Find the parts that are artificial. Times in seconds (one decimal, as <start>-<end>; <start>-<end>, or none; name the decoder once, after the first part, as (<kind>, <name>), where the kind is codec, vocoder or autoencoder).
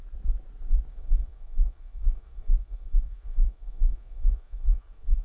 0.9-5.2 (codec, SNAC)